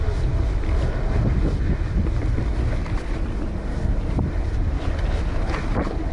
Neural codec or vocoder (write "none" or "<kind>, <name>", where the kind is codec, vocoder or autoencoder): none